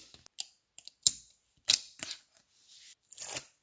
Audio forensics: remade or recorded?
recorded